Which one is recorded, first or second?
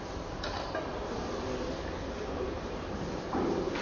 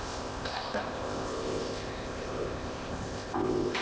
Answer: first